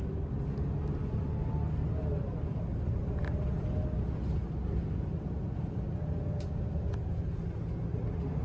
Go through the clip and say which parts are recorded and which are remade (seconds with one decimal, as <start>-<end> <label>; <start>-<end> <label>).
0.0-8.4 recorded